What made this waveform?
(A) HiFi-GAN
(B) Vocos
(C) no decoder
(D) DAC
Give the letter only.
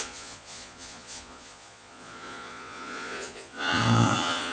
B